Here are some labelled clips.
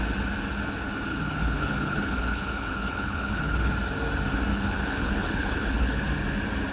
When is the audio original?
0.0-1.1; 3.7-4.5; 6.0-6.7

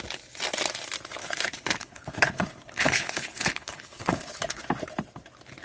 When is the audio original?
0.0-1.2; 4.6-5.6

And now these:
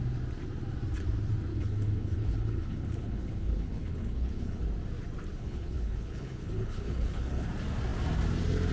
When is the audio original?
0.0-1.5; 4.6-5.3; 7.5-8.7

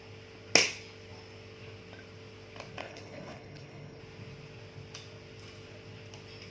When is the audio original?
0.0-2.8; 4.0-6.5